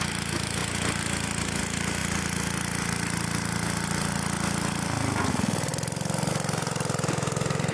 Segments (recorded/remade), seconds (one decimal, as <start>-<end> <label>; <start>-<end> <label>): 0.0-2.0 remade; 2.0-5.3 recorded; 5.3-5.7 remade; 5.7-6.3 recorded; 6.3-7.7 remade